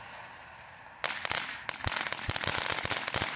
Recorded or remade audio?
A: recorded